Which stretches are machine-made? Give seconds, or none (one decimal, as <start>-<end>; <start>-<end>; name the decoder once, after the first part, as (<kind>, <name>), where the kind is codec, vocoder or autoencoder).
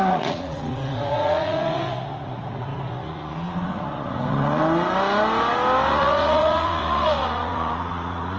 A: 0.0-4.6 (vocoder, Vocos); 5.9-8.4